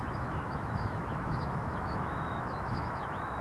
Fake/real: fake